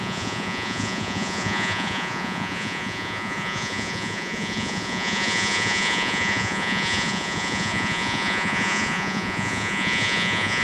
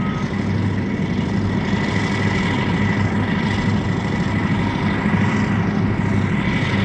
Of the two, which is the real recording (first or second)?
second